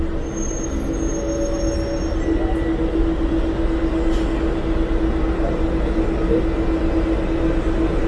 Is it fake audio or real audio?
real